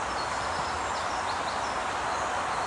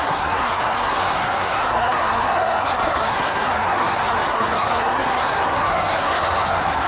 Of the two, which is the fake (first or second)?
second